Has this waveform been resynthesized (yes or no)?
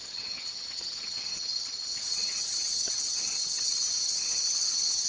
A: yes